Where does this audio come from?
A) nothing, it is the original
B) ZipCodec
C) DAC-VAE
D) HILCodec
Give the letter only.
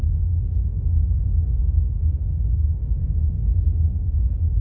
C